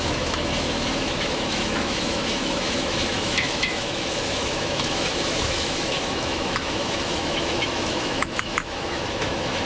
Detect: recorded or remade remade